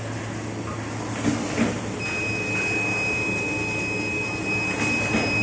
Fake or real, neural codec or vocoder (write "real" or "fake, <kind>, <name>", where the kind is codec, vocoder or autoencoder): real